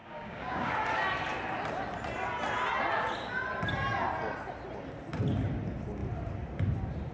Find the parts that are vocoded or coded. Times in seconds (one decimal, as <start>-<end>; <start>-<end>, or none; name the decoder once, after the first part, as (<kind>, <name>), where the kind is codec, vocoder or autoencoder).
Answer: 0.0-0.7 (codec, DAC)